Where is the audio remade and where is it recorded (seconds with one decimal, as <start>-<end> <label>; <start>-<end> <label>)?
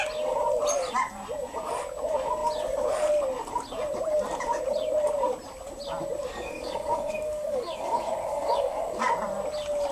0.0-6.3 recorded; 6.3-9.1 remade; 9.1-9.9 recorded